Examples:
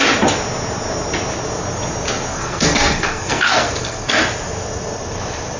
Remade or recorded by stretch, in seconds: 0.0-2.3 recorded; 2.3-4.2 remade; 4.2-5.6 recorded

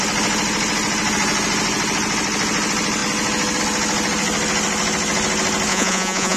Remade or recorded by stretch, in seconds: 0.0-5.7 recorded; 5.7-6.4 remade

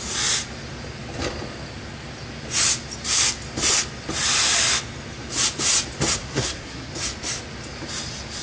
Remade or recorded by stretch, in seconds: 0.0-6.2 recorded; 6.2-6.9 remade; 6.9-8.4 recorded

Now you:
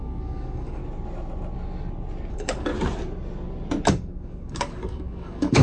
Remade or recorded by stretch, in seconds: 0.0-0.8 remade; 0.8-2.3 recorded; 2.3-2.7 remade; 2.7-3.9 recorded; 3.9-5.6 remade

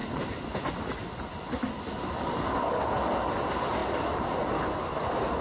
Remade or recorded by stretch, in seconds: 0.0-5.4 recorded

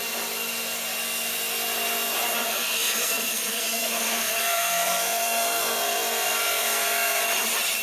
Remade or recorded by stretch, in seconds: 0.0-2.5 recorded; 2.5-7.2 remade; 7.2-7.8 recorded

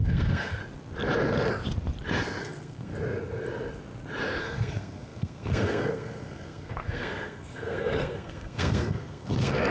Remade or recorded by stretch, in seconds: 0.0-0.6 remade; 0.6-2.4 recorded; 2.4-2.9 remade; 2.9-4.4 recorded; 4.4-9.7 remade

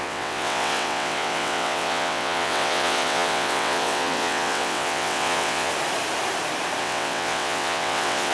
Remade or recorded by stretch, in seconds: 0.0-5.7 remade; 5.7-6.8 recorded; 6.8-8.3 remade